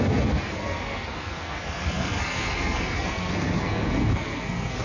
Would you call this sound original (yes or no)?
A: no